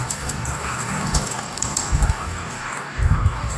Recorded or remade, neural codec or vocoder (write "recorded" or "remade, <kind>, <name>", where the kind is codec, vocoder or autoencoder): remade, codec, DAC